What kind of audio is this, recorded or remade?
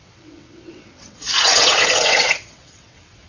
remade